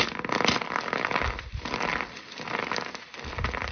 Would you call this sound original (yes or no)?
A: yes